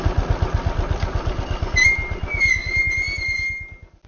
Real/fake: real